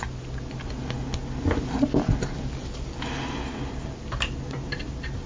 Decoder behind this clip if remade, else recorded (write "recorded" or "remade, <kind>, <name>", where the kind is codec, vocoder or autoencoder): recorded